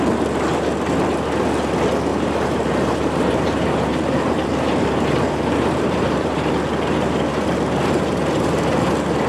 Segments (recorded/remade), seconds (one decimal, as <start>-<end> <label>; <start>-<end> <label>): 0.0-2.1 recorded; 2.1-6.5 remade; 6.5-9.3 recorded